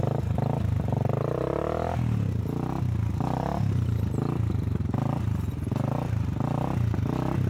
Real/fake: real